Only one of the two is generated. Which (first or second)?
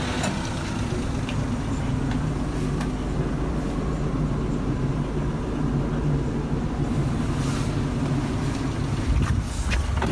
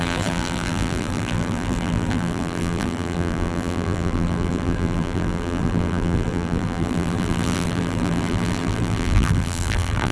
second